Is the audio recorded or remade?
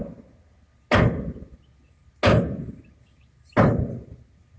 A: recorded